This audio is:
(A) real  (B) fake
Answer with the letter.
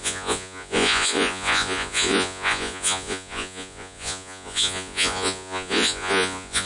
B